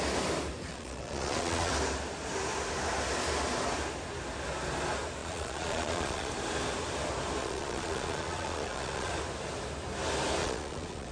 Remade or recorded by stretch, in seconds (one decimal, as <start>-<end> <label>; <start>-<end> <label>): 0.0-0.7 recorded; 0.7-1.7 remade; 1.7-5.2 recorded; 5.2-6.3 remade; 6.3-7.4 recorded; 7.4-9.1 remade; 9.1-10.4 recorded; 10.4-11.1 remade